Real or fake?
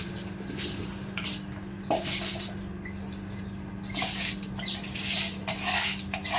real